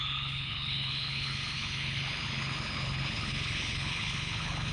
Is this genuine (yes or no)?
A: no